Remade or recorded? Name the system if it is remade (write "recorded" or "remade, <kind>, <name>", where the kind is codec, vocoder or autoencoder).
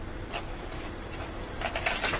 recorded